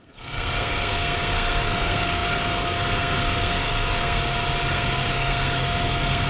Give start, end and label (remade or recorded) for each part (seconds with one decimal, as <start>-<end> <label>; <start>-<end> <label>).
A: 0.0-4.2 remade; 4.2-4.7 recorded; 4.7-6.3 remade

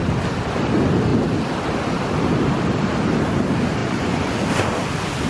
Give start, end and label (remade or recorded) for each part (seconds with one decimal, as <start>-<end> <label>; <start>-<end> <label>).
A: 0.0-3.8 recorded; 3.8-4.4 remade; 4.4-5.3 recorded

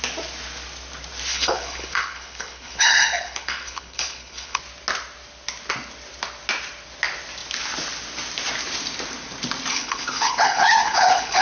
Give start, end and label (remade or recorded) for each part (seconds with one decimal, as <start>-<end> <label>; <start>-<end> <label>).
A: 0.0-1.3 recorded; 1.3-4.6 remade; 4.6-9.7 recorded; 9.7-11.4 remade

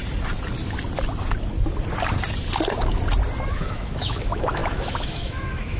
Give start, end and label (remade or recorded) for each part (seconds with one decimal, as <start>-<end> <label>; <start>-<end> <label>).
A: 0.0-3.5 recorded; 3.5-5.8 remade